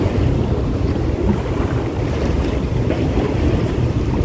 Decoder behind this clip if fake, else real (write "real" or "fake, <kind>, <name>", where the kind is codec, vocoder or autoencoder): real